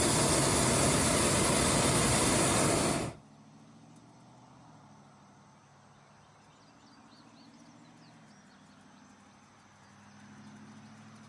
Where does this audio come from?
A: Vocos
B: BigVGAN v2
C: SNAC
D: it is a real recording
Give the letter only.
D